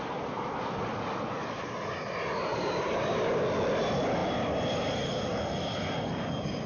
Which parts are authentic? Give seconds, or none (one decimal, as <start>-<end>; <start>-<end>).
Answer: 0.0-2.5; 3.3-6.7